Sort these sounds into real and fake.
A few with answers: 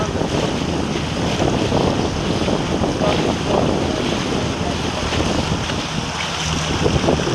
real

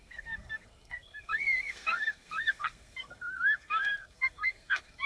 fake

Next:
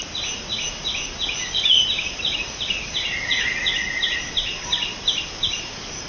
real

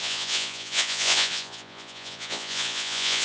fake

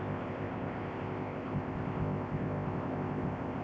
fake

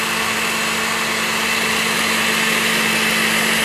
real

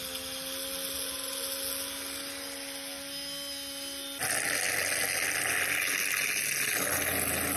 real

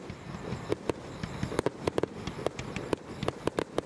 real